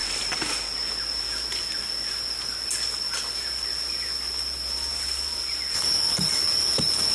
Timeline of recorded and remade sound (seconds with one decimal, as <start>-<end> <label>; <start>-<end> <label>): 0.0-7.1 recorded